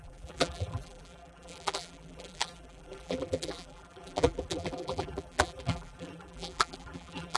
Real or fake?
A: fake